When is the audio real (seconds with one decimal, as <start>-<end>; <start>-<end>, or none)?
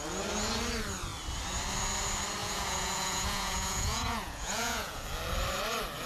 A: 0.0-2.4; 5.0-6.1